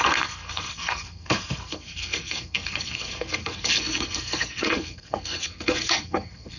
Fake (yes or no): yes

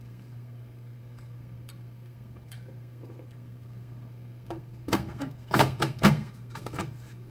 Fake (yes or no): yes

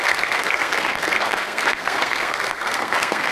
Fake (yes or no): yes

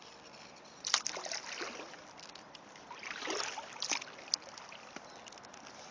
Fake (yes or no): no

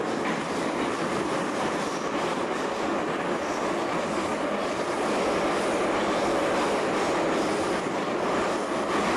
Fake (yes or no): no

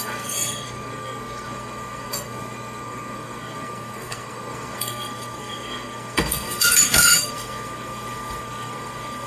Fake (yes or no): yes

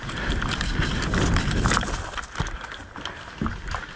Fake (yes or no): no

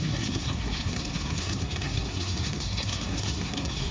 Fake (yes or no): yes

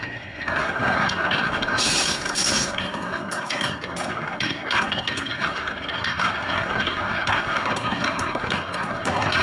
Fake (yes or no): yes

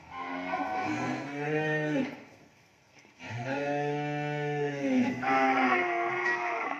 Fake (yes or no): yes